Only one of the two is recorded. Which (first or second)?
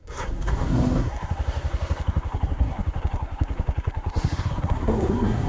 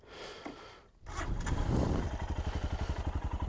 second